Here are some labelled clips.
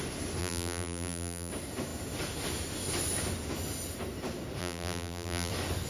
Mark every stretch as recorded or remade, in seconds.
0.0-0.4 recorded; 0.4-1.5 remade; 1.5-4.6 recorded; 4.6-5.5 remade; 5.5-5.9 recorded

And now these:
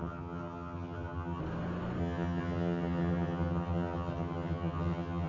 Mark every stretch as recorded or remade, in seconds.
0.0-1.4 remade; 1.4-2.0 recorded; 2.0-5.3 remade

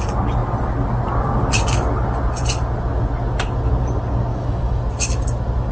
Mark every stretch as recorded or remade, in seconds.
0.0-4.3 recorded; 4.3-4.8 remade; 4.8-5.7 recorded

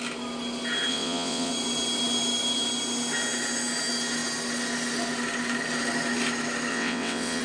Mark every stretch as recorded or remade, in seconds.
0.0-0.9 recorded; 0.9-1.5 remade; 1.5-6.7 recorded; 6.7-7.4 remade

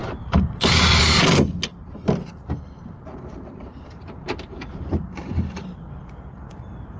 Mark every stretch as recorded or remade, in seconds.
0.0-1.0 remade; 1.0-1.7 recorded; 1.7-5.8 remade; 5.8-7.0 recorded

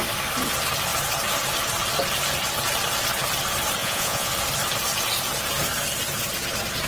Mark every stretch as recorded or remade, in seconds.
0.0-3.8 recorded; 3.8-4.3 remade; 4.3-6.9 recorded

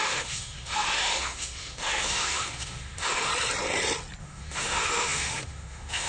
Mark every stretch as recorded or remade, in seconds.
0.0-3.3 remade; 3.3-4.2 recorded; 4.2-6.1 remade

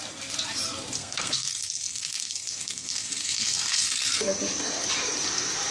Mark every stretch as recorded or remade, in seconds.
0.0-1.0 recorded; 1.0-4.4 remade; 4.4-5.7 recorded